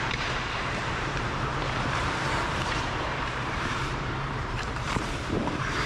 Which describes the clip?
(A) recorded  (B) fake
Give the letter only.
B